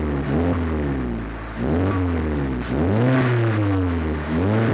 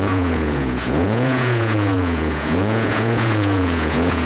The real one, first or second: first